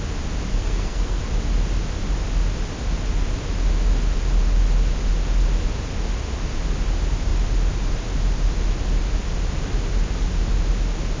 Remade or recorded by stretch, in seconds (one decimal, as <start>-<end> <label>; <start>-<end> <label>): 0.0-0.5 recorded; 0.5-1.2 remade; 1.2-11.2 recorded